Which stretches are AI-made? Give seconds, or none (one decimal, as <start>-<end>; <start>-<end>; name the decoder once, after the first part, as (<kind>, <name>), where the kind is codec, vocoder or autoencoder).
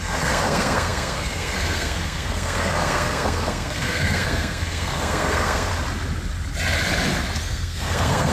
0.0-5.7 (codec, SNAC); 7.4-8.3